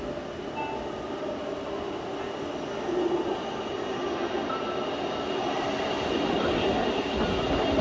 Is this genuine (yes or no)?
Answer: yes